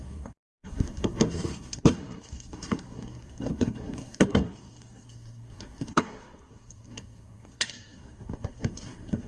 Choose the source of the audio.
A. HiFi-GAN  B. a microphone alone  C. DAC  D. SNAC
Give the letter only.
D